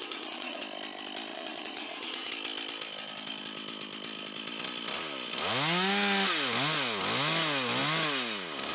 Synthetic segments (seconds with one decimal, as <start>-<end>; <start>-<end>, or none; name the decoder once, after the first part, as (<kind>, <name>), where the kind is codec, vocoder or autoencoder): 0.0-0.6 (vocoder, Vocos); 1.3-2.3

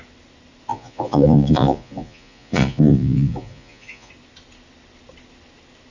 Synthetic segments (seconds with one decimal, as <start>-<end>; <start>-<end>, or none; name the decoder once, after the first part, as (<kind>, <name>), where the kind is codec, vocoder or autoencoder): 0.7-4.1 (vocoder, Vocos)